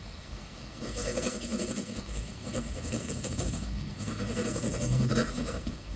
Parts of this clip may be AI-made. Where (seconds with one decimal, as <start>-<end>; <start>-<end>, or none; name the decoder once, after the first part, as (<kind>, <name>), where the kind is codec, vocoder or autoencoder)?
0.0-6.0 (codec, SNAC)